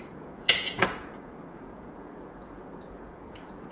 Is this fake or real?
fake